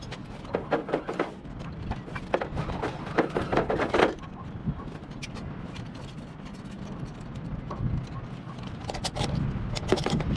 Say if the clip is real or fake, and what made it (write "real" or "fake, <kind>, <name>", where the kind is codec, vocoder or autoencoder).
real